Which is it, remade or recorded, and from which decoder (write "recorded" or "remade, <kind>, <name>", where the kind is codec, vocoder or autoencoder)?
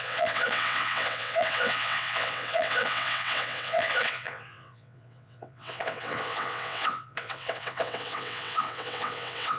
remade, vocoder, WaveNeXt